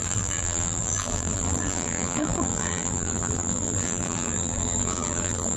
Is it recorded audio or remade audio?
remade